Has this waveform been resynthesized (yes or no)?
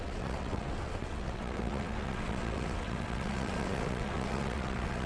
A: yes